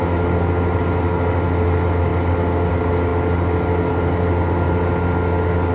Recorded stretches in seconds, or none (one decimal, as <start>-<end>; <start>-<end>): 0.0-5.7